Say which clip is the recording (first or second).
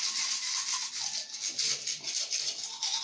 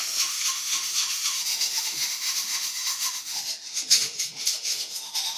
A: first